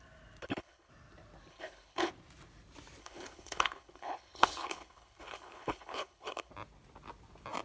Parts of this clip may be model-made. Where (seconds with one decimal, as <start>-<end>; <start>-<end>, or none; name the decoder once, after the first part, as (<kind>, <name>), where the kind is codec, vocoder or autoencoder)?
0.4-0.9 (codec, HILCodec); 1.5-2.1; 3.0-6.5